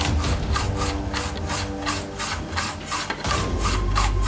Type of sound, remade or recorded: recorded